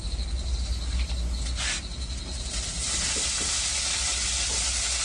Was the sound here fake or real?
real